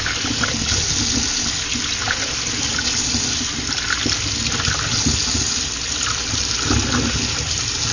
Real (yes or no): yes